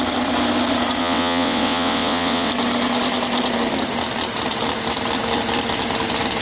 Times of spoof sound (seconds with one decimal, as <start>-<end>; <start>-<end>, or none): 1.0-2.5

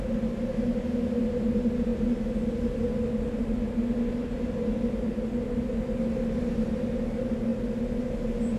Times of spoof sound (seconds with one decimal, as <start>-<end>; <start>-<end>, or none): none

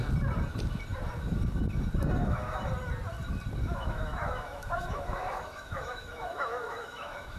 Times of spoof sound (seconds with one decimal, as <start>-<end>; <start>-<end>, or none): 2.2-2.7; 3.6-7.4

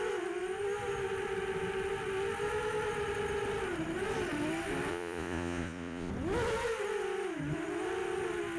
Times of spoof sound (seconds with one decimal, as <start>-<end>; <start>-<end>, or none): 4.9-6.1

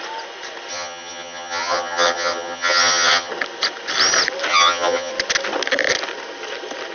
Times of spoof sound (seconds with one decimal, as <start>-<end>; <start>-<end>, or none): 0.7-3.3; 4.5-5.1

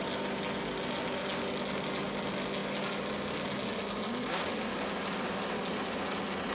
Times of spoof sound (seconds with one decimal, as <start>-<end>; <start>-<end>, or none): none